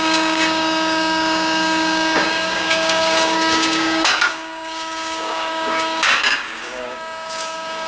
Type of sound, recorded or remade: remade